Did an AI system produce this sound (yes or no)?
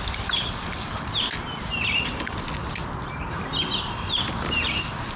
no